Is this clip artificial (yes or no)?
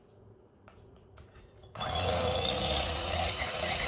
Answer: yes